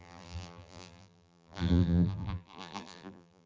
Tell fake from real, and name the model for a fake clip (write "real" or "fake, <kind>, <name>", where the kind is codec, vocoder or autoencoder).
fake, vocoder, BigVGAN v2